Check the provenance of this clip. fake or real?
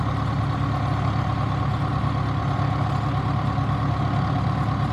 real